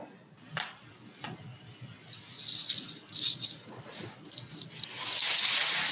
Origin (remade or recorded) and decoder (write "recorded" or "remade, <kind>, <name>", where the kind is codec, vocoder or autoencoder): recorded